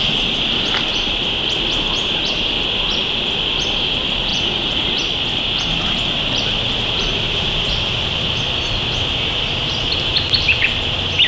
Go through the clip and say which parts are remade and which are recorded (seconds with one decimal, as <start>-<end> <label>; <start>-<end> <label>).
0.0-4.3 recorded; 4.3-4.9 remade; 4.9-11.3 recorded